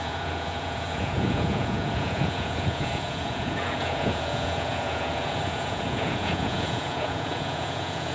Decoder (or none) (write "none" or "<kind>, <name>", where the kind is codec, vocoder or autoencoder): vocoder, Vocos